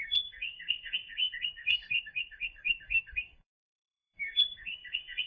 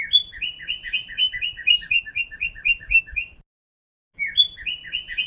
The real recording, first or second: second